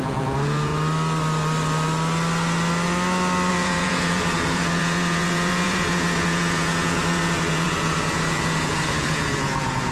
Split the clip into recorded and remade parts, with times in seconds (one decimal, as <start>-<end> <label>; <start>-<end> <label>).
0.0-0.7 remade; 0.7-3.5 recorded; 3.5-9.9 remade